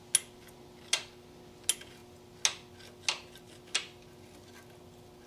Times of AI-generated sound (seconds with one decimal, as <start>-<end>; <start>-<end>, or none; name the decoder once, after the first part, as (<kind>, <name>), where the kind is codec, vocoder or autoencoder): none